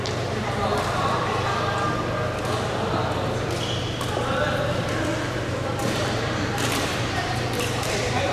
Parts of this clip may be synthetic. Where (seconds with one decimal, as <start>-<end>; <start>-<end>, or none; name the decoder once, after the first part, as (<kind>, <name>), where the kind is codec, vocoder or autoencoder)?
5.8-7.3 (vocoder, BigVGAN v2)